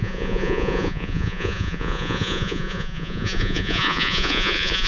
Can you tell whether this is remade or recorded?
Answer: remade